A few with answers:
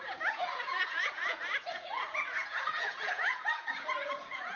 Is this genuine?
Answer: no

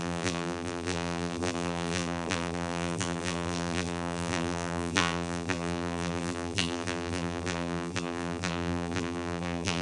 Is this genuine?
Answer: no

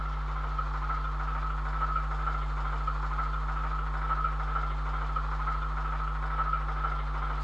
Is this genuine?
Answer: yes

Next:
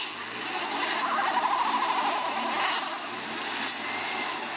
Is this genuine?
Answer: yes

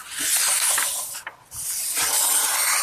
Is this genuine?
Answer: yes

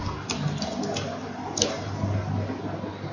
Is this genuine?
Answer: yes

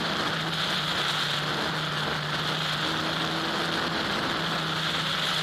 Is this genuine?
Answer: yes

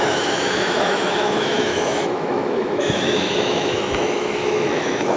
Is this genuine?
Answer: no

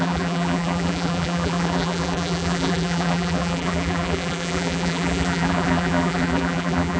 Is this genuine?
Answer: no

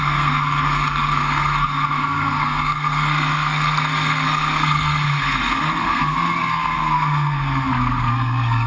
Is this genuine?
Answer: no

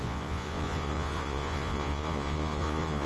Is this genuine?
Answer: no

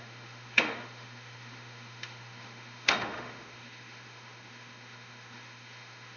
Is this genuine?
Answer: no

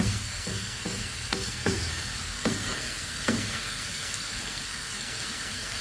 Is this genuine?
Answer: no